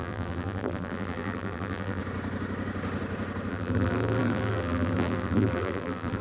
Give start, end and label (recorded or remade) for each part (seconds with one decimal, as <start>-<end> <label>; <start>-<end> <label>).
0.0-2.0 remade; 2.0-3.5 recorded; 3.5-6.2 remade